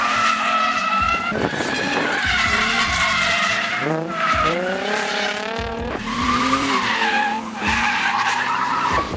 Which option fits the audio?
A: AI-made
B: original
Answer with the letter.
A